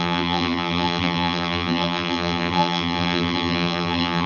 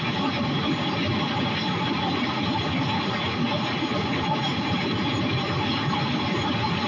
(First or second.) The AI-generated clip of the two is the first